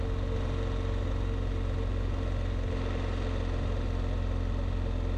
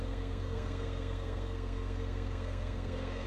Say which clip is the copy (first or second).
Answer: second